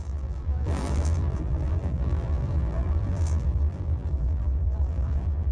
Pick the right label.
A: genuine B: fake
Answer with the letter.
B